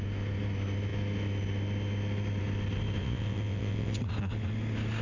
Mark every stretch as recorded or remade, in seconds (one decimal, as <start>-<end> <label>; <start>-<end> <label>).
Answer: 0.0-3.0 recorded; 3.0-4.0 remade; 4.0-5.0 recorded